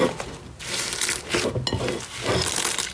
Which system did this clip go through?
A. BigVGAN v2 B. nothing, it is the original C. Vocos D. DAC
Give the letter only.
B